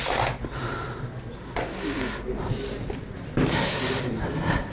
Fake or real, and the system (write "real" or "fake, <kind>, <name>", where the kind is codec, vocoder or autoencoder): real